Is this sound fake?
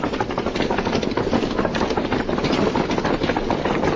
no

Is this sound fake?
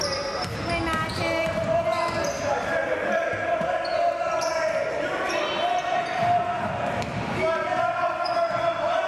no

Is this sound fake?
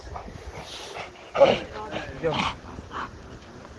no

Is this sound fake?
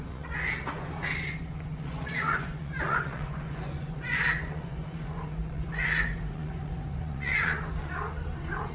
yes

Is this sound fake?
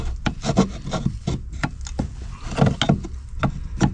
no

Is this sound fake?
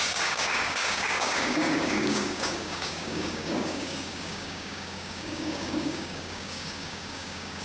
yes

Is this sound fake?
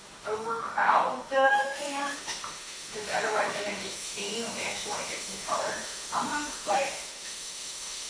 yes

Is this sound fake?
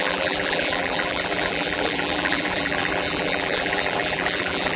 yes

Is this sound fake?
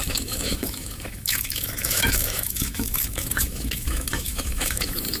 yes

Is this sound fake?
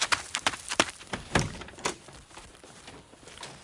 yes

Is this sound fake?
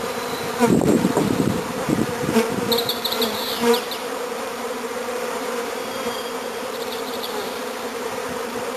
yes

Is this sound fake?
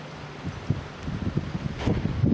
no